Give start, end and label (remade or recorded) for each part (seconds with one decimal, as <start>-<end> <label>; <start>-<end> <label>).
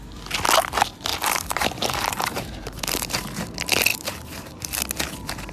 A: 0.0-1.1 recorded; 1.1-3.0 remade; 3.0-3.9 recorded; 3.9-4.8 remade; 4.8-5.5 recorded